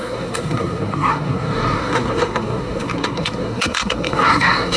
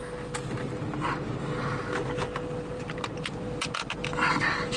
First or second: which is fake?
first